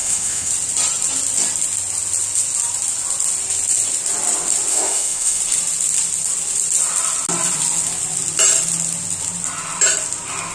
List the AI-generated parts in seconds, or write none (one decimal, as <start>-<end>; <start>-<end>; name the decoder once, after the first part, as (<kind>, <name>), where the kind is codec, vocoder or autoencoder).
0.0-0.5 (autoencoder, DAC-VAE); 4.7-5.4